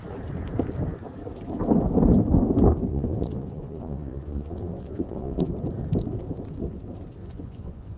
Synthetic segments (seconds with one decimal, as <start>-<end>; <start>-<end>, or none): 2.9-5.5; 7.2-8.0